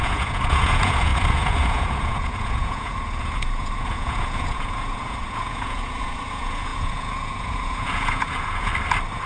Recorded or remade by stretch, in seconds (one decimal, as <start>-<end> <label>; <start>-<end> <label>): 0.0-8.7 remade; 8.7-9.3 recorded